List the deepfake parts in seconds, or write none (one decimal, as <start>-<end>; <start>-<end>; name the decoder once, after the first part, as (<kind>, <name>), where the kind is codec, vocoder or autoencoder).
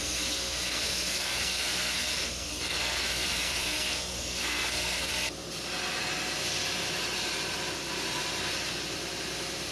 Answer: 0.0-5.1 (codec, SNAC)